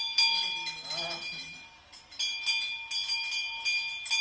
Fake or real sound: real